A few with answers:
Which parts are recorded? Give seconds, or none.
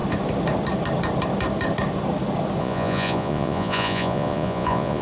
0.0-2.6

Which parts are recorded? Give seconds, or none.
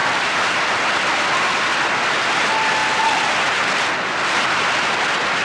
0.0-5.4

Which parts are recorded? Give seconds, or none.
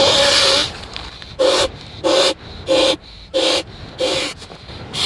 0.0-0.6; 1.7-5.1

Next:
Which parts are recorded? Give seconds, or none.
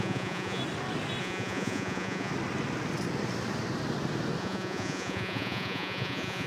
0.6-1.2; 2.3-4.4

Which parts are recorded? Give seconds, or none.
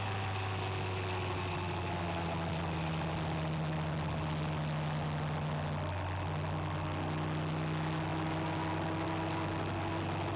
0.0-10.4